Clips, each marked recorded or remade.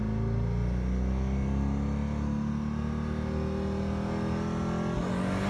recorded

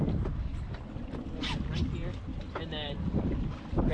recorded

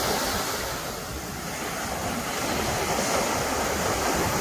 recorded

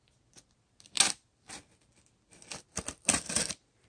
recorded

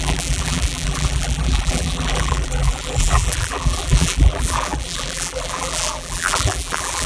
remade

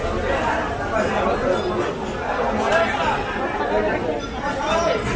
recorded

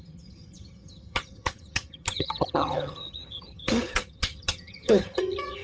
remade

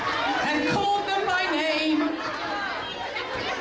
recorded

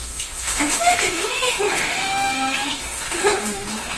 remade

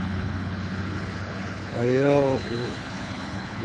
remade